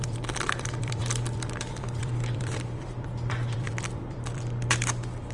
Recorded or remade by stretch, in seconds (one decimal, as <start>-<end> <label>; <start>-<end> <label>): 0.0-5.3 remade